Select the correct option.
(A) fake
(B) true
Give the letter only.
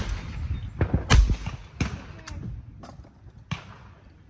B